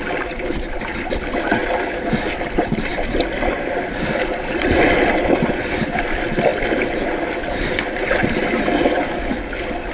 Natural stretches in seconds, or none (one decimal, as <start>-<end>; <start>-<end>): 0.0-2.9; 5.5-6.5; 9.0-9.9